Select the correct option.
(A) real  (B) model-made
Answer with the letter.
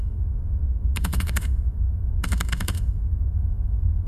B